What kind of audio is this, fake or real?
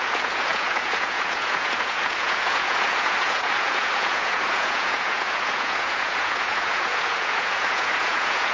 fake